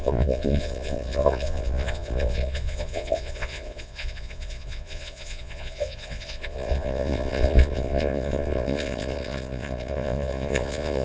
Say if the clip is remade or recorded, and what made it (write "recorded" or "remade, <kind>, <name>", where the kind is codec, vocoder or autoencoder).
remade, vocoder, Vocos